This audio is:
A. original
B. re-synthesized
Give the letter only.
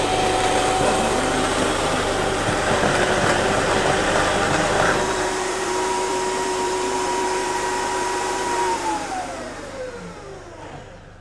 B